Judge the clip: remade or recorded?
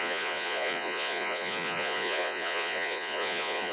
remade